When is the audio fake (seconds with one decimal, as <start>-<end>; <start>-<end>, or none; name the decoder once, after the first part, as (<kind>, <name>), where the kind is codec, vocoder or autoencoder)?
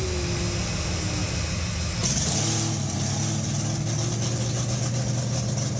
none